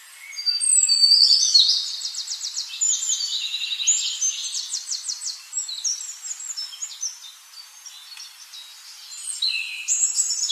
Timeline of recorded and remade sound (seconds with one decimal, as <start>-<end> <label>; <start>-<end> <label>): 0.0-10.5 recorded